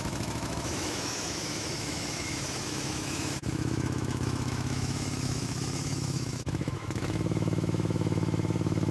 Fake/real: fake